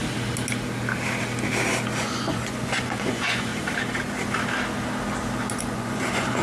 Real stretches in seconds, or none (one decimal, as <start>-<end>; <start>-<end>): 0.0-2.0; 3.5-5.6